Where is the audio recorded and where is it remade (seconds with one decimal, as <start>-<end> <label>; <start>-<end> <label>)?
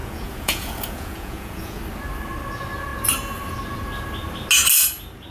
0.0-1.8 remade; 1.8-5.3 recorded